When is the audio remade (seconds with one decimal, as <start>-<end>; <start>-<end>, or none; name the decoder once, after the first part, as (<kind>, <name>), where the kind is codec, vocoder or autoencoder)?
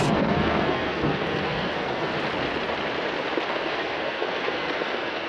0.0-2.1 (codec, SNAC); 3.5-5.3